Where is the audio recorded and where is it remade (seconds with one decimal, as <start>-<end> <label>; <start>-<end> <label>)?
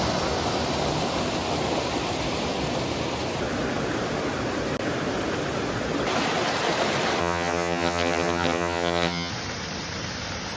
0.0-7.2 recorded; 7.2-9.3 remade; 9.3-10.6 recorded